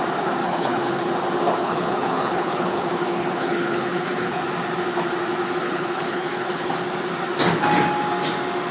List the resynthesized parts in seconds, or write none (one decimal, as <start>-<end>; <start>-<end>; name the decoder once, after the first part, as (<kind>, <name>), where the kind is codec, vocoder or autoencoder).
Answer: 0.4-1.1 (codec, HILCodec); 1.6-4.4; 5.6-6.7